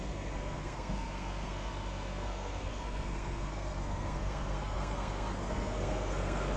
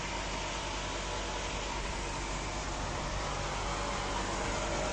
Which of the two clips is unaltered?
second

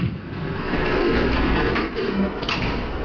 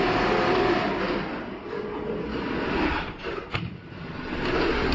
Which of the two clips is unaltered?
second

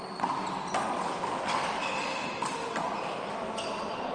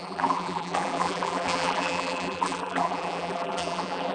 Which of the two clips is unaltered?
first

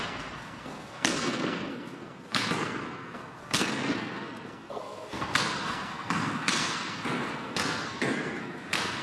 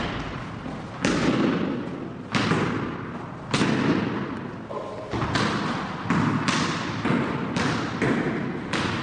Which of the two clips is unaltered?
second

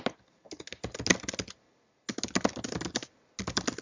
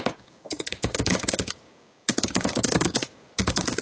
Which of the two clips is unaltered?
first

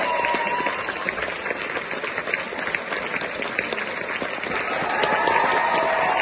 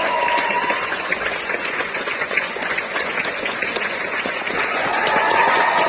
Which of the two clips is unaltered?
first